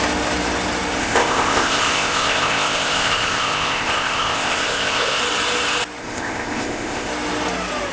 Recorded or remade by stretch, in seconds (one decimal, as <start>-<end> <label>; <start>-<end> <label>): 0.0-1.0 recorded; 1.0-5.2 remade; 5.2-6.0 recorded; 6.0-7.1 remade; 7.1-7.9 recorded